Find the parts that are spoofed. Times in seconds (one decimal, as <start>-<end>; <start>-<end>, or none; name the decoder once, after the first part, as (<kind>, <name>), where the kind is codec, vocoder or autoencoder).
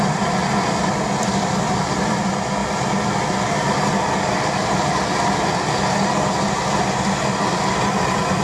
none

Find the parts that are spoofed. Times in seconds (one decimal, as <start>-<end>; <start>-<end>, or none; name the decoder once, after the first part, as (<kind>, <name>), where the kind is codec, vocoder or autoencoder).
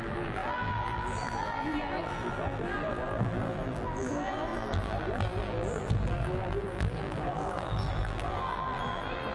0.0-9.3 (vocoder, BigVGAN v2)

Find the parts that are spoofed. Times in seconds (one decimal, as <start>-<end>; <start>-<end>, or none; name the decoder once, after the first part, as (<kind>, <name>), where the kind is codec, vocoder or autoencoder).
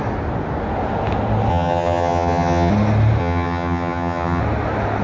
1.5-2.7 (vocoder, HiFi-GAN); 3.2-4.4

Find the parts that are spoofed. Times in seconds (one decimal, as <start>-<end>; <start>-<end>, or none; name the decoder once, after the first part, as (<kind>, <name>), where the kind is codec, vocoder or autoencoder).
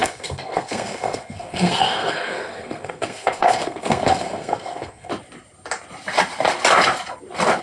0.0-5.1 (codec, SNAC)